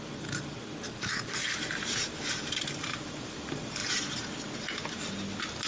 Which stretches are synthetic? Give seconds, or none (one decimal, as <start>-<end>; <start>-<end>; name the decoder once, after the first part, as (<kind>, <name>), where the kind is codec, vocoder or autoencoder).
0.0-3.8 (vocoder, BigVGAN v2)